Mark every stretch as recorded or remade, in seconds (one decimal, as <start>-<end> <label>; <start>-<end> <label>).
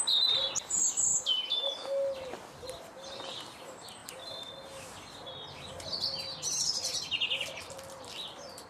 0.0-1.1 remade; 1.1-2.8 recorded; 2.8-8.7 remade